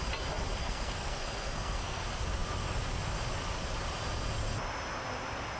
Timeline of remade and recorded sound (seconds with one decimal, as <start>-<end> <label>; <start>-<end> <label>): 0.0-0.6 recorded; 0.6-2.0 remade; 2.0-5.6 recorded